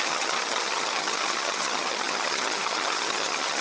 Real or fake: fake